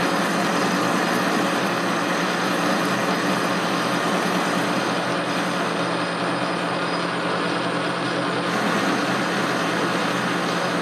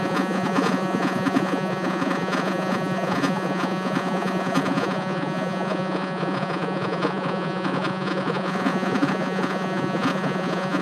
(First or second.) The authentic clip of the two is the first